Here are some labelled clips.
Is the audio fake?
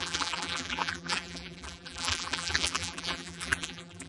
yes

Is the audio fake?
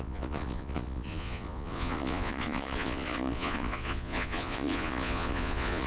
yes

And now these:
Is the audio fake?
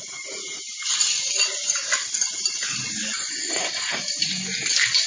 no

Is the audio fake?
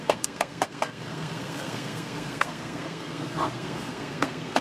yes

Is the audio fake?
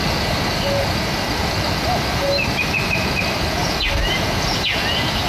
yes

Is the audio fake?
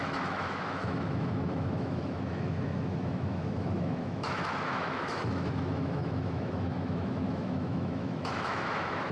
yes